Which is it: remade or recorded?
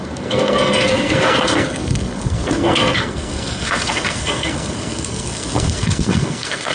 remade